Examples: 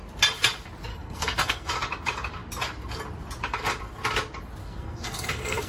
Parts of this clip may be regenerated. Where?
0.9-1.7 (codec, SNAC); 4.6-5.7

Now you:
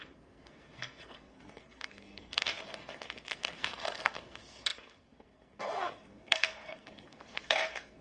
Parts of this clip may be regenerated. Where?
0.0-8.0 (codec, SNAC)

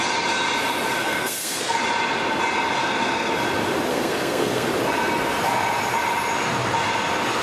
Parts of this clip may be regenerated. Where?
1.0-1.8 (codec, SNAC); 2.8-3.3; 3.9-4.7

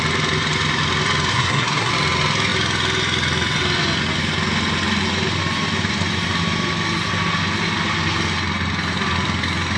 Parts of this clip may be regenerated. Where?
1.3-1.9 (codec, SNAC)

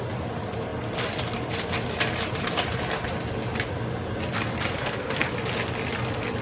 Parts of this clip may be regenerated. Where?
4.8-5.3 (codec, SNAC)

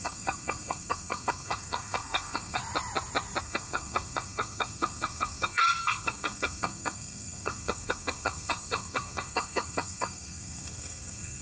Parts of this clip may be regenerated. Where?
0.0-2.6 (codec, SNAC); 3.4-11.4

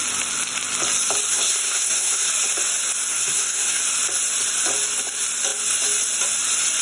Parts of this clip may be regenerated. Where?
1.3-2.3 (codec, SNAC); 3.1-3.8

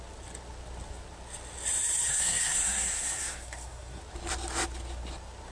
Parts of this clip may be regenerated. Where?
2.1-4.0 (codec, SNAC)